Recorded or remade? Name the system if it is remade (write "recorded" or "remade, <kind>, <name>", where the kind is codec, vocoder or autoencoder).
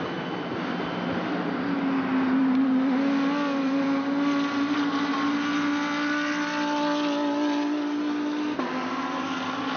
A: recorded